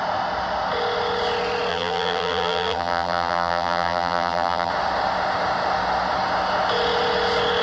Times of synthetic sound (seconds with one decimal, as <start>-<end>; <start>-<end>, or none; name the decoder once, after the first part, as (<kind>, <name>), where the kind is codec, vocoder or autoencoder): 1.7-4.7 (vocoder, BigVGAN v2)